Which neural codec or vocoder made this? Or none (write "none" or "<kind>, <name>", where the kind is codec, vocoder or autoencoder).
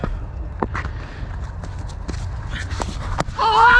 none